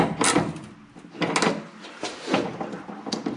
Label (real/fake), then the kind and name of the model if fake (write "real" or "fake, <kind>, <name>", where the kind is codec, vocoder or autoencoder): real